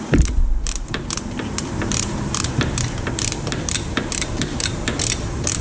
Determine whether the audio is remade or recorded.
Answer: remade